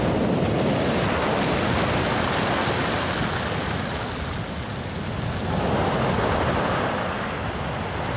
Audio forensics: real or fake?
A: real